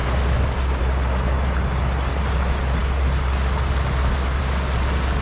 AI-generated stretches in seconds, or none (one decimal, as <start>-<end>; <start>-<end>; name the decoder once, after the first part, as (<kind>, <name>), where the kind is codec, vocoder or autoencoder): none